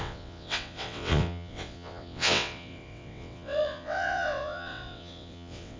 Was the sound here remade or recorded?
remade